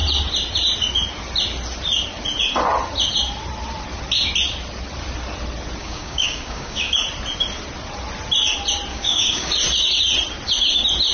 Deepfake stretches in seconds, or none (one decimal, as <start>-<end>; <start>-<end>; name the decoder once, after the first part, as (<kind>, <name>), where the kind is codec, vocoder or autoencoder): 5.8-6.9 (codec, DAC); 8.9-9.5